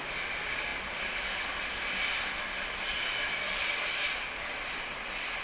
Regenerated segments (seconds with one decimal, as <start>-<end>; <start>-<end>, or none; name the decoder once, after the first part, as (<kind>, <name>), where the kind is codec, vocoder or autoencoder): none